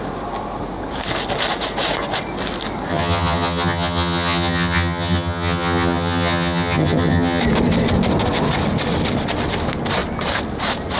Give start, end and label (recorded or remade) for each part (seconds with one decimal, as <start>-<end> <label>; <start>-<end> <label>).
0.0-2.9 recorded; 2.9-7.4 remade; 7.4-11.0 recorded